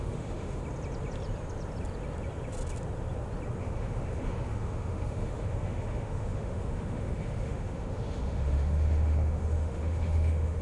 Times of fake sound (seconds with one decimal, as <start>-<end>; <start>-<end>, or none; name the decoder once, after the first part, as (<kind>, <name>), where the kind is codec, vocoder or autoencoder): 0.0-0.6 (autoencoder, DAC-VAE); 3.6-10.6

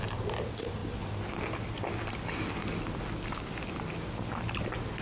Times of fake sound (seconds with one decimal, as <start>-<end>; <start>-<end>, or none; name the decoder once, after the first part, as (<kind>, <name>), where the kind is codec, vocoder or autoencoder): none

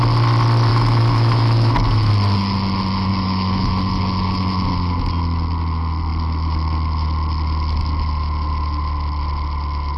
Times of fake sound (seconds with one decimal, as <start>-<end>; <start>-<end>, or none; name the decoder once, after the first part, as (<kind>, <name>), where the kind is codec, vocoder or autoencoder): 0.7-2.1 (autoencoder, DAC-VAE); 3.1-3.7

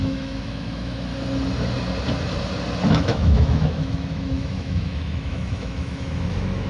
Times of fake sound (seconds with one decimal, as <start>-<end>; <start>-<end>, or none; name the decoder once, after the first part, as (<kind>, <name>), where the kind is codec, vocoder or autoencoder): 0.0-1.1 (autoencoder, DAC-VAE); 2.9-6.7

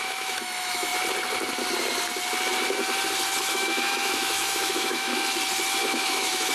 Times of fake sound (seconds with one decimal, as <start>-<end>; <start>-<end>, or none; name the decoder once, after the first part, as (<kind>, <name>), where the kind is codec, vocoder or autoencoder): 0.0-0.9 (autoencoder, DAC-VAE); 3.4-5.1; 5.8-6.5